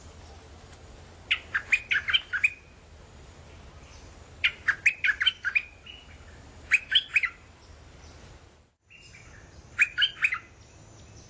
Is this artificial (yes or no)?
no